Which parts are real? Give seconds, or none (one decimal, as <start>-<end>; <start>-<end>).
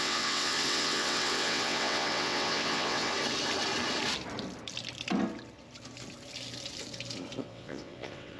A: 3.1-7.4